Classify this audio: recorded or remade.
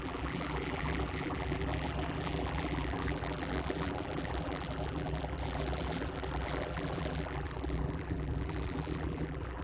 remade